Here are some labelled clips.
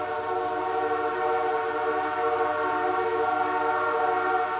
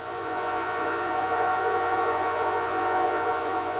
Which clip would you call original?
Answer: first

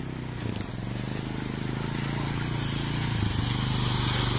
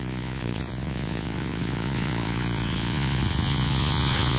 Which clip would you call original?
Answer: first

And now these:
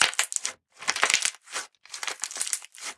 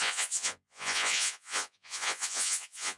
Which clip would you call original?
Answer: first